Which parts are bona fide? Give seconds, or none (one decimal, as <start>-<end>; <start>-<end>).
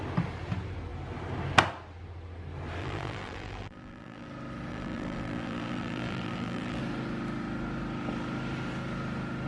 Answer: 0.0-2.8; 4.3-4.7; 6.8-9.5